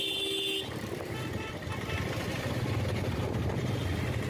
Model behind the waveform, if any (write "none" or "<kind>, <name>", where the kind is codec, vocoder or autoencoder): none